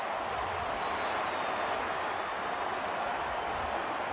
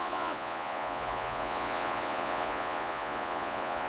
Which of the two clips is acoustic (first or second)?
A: first